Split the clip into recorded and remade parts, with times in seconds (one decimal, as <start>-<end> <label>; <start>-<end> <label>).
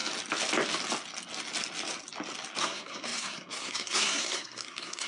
0.0-2.6 recorded; 2.6-5.1 remade